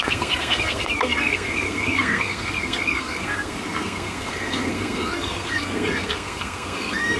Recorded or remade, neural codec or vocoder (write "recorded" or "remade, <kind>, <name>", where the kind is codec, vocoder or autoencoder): remade, codec, SNAC